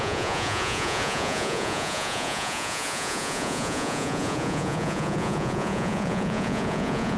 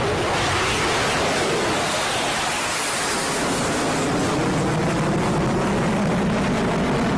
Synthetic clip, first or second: first